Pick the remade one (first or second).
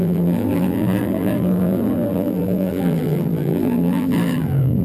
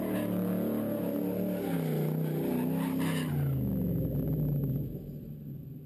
first